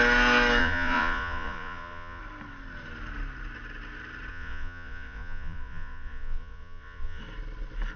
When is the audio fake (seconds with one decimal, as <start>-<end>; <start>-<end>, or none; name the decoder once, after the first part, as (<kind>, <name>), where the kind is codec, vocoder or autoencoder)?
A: 0.6-2.2 (vocoder, Vocos); 4.3-7.2